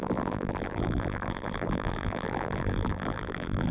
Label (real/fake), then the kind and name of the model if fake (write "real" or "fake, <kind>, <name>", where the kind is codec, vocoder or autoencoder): fake, vocoder, BigVGAN v2